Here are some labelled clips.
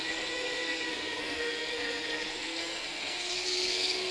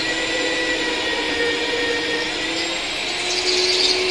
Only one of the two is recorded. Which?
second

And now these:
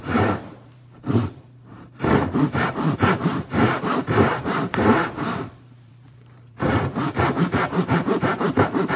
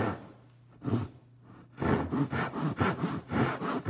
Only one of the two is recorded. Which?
second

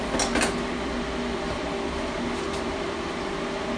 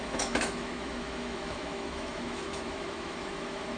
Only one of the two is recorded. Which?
first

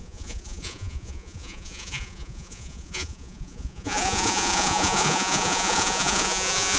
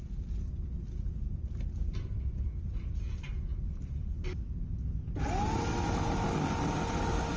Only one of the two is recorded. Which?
second